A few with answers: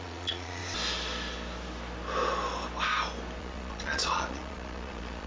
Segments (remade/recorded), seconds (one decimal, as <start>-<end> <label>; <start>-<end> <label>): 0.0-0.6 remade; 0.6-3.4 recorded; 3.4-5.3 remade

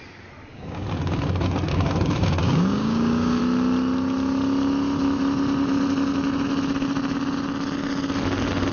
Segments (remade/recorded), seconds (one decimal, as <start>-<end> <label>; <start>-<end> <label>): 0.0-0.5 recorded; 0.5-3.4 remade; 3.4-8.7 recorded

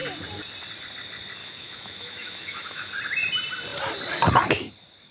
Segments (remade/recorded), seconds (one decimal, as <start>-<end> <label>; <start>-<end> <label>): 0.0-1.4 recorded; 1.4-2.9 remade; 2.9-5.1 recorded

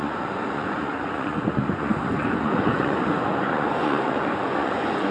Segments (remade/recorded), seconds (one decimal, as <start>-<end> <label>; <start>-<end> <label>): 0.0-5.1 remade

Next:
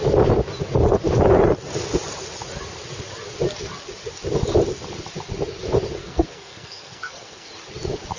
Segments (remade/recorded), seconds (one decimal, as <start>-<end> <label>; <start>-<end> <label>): 0.0-6.0 recorded; 6.0-7.5 remade; 7.5-8.2 recorded